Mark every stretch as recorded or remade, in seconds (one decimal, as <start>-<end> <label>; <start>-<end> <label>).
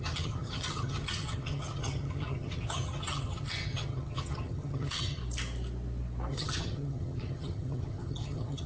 0.0-5.2 remade; 5.2-6.3 recorded; 6.3-8.7 remade